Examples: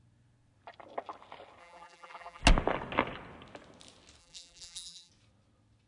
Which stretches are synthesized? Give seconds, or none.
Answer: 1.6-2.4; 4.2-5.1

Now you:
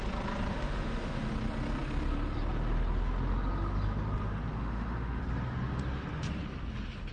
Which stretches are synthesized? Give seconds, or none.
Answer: 0.5-1.3; 4.5-5.2